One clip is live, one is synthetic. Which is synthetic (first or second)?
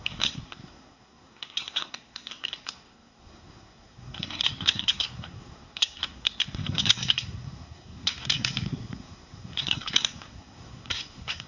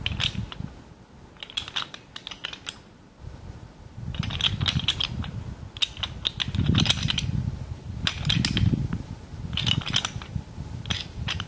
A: first